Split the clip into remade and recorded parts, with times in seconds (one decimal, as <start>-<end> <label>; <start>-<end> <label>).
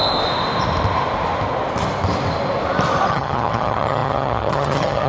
0.0-3.1 recorded; 3.1-5.1 remade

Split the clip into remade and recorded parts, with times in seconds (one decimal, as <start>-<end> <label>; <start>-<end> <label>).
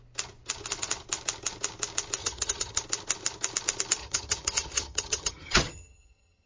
0.0-2.2 recorded; 2.2-2.8 remade; 2.8-4.0 recorded; 4.0-6.5 remade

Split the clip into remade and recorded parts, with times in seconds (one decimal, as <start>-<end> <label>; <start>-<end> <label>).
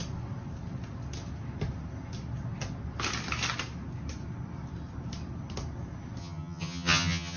0.0-6.2 recorded; 6.2-7.4 remade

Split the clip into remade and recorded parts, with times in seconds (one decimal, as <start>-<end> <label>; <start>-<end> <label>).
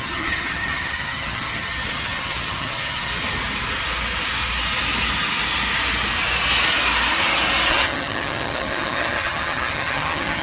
0.0-3.1 remade; 3.1-7.7 recorded; 7.7-10.4 remade